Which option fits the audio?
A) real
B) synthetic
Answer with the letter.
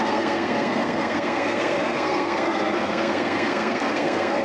B